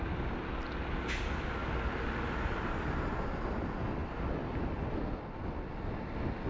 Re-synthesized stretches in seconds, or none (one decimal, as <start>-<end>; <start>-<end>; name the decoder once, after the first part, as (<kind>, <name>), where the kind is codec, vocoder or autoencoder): none